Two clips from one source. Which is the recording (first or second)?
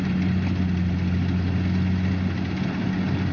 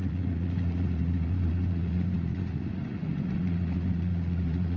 first